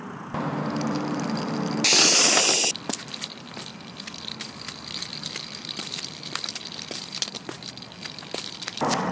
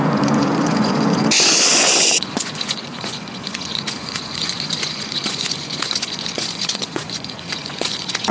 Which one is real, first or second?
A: first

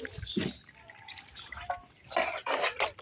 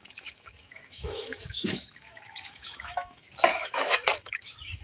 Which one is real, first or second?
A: first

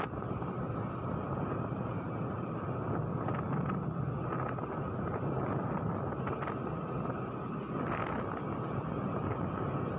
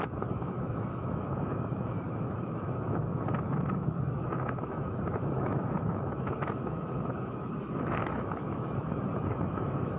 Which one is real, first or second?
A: first